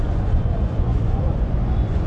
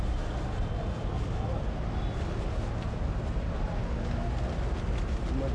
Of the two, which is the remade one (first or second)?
first